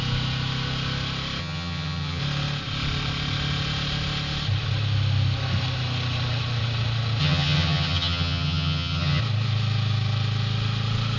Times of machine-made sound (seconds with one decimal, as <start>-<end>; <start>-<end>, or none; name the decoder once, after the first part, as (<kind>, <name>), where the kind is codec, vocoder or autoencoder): 1.4-2.2 (vocoder, HiFi-GAN); 7.2-9.2